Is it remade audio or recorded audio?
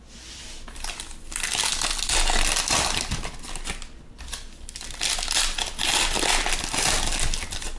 recorded